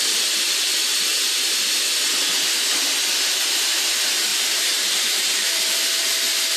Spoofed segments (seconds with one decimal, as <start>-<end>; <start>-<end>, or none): 4.3-6.6

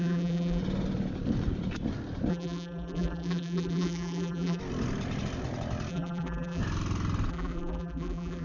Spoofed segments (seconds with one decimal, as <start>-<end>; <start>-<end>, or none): 0.0-0.6; 2.3-4.6; 5.9-6.6; 7.3-8.4

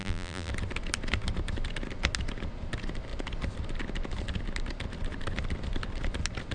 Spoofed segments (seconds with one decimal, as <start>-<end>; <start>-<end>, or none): 0.0-0.5

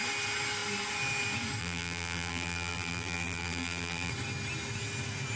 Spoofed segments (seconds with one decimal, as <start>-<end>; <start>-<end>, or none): 1.6-4.1

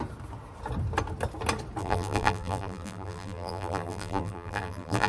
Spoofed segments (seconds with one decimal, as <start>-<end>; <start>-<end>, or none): 1.8-5.1

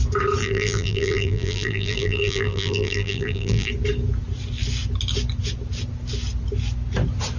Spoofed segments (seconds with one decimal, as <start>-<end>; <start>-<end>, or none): 0.4-3.7